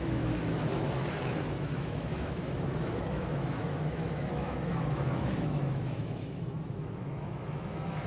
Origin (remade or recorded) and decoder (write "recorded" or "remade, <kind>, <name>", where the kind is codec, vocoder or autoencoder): remade, autoencoder, DAC-VAE